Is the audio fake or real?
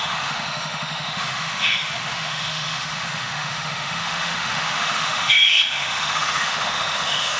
fake